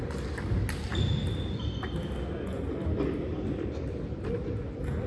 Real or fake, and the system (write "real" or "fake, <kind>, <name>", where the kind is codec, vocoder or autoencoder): real